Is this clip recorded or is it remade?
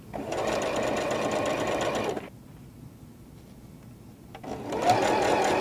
recorded